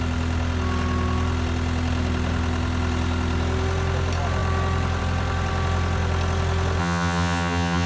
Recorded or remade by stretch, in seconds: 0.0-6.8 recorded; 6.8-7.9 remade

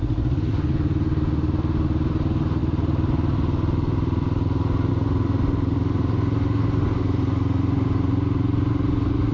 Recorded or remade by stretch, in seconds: 0.0-9.3 recorded